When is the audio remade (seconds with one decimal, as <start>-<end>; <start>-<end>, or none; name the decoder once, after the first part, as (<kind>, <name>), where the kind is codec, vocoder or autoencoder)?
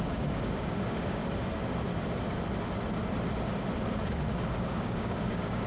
0.0-1.2 (codec, DAC); 4.6-5.7